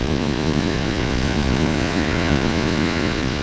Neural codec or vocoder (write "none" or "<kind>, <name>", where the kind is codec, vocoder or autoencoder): vocoder, Vocos